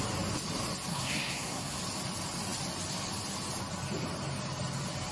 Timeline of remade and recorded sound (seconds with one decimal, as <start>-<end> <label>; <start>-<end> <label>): 0.0-0.9 recorded; 0.9-1.8 remade; 1.8-5.1 recorded